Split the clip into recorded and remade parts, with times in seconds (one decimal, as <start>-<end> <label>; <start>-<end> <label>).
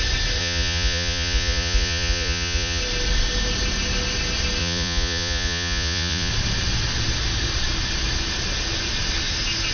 0.0-0.4 recorded; 0.4-2.8 remade; 2.8-4.6 recorded; 4.6-6.3 remade; 6.3-9.7 recorded